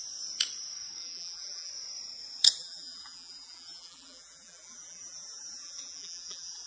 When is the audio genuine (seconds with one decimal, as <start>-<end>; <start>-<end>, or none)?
0.0-1.0; 1.7-2.6